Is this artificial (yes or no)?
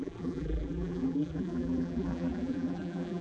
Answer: yes